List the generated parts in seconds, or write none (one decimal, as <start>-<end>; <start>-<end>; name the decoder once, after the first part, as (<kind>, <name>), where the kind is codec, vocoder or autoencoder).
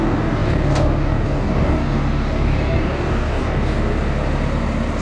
0.0-3.9 (codec, DAC)